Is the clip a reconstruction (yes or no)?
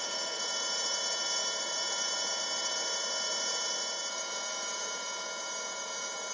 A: yes